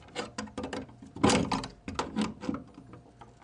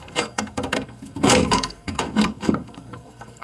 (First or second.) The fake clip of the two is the second